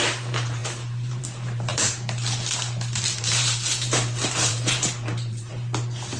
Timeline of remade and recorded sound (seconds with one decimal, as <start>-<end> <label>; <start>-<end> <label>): 0.0-1.7 remade; 1.7-3.2 recorded; 3.2-5.5 remade; 5.5-6.2 recorded